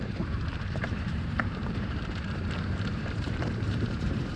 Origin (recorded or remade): remade